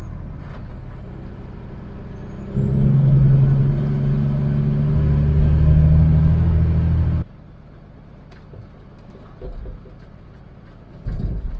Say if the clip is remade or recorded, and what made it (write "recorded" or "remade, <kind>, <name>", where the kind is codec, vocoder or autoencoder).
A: recorded